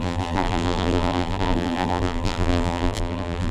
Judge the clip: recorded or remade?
remade